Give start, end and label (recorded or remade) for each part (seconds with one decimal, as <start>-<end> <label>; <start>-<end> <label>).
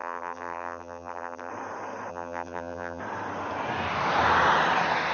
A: 0.0-1.5 remade; 1.5-2.1 recorded; 2.1-3.0 remade; 3.0-5.1 recorded